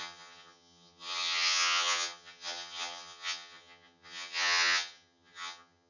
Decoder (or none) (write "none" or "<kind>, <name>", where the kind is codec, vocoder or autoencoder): vocoder, HiFi-GAN